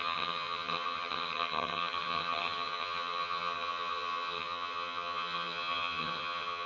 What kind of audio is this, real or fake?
fake